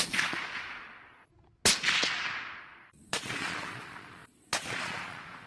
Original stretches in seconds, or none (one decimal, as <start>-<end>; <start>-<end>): 1.3-2.6